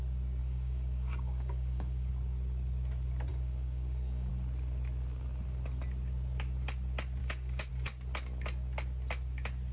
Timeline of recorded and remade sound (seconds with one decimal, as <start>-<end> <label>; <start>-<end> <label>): 0.0-0.4 recorded; 0.4-2.1 remade; 2.1-3.3 recorded; 3.3-4.3 remade; 4.3-7.2 recorded; 7.2-7.7 remade; 7.7-9.7 recorded